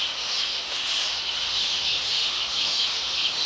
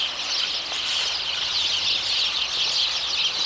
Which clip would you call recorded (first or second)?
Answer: second